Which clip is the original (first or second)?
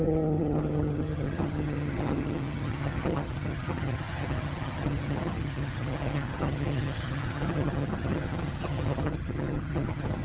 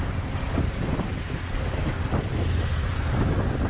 second